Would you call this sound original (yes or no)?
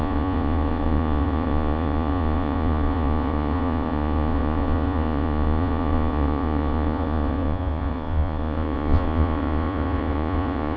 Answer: no